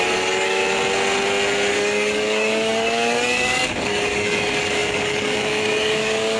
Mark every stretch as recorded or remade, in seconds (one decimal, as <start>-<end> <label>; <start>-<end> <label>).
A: 0.0-0.6 remade; 0.6-1.7 recorded; 1.7-6.4 remade